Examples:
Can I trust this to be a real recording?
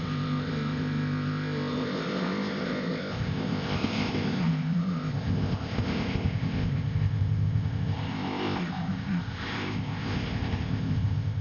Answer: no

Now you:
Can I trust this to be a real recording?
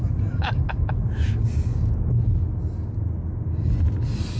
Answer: yes